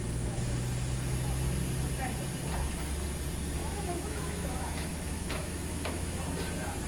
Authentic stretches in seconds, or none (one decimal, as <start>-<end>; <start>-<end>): 0.0-3.6; 6.2-6.9

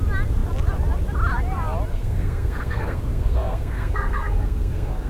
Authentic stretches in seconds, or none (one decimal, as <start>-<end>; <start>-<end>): 0.0-1.9

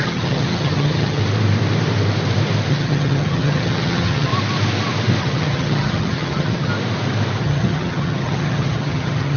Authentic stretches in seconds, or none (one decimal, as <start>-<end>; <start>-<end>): 1.2-2.7; 4.3-5.2; 6.7-7.4

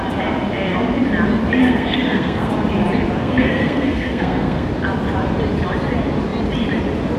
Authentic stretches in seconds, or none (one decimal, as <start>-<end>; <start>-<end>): 0.0-1.6; 2.5-3.2; 4.7-7.2

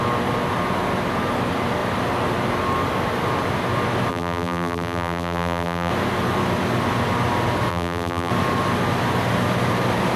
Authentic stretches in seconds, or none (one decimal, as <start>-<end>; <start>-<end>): 0.0-4.1; 5.9-7.7; 8.3-10.2

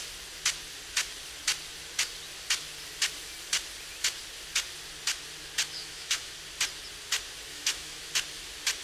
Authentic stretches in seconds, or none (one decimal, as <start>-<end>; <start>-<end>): 0.0-5.8; 6.3-7.5; 8.1-8.8